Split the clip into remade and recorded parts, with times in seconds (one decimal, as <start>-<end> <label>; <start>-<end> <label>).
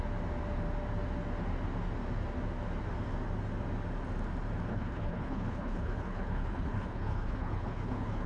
0.0-4.7 recorded; 4.7-8.3 remade